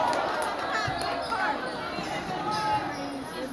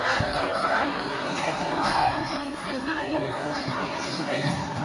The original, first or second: first